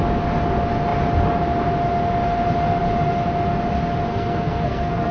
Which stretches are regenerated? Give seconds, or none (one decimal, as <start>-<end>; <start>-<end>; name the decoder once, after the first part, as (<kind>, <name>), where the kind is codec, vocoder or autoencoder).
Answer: 4.1-5.1 (codec, SNAC)